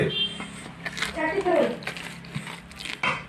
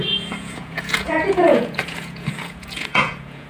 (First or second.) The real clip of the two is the first